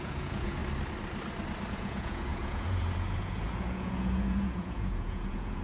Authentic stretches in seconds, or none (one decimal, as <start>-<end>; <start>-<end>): 0.6-1.7